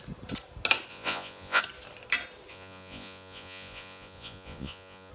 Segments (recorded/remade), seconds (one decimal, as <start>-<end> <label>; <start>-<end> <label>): 0.0-0.9 recorded; 0.9-1.6 remade; 1.6-2.5 recorded; 2.5-5.1 remade